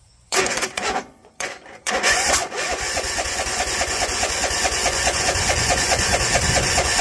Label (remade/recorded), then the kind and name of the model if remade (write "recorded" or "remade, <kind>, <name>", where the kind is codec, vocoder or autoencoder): remade, vocoder, Vocos